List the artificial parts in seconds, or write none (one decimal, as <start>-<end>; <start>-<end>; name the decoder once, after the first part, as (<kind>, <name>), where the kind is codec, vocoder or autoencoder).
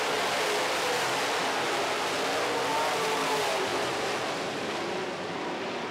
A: none